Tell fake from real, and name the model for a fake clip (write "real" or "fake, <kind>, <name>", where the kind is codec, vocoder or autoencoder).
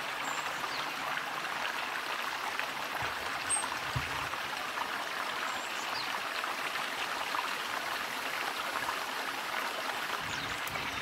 real